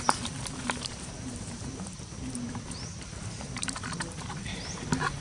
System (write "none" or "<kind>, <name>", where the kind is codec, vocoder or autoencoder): vocoder, BigVGAN v2